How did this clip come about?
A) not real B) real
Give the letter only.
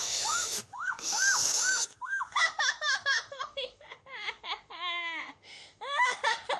A